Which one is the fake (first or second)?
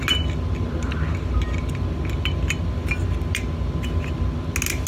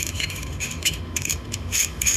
second